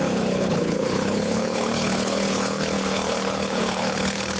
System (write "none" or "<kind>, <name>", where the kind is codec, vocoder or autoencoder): codec, HILCodec